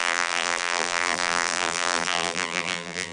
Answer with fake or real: fake